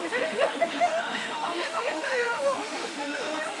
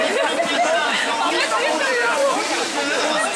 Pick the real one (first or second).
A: second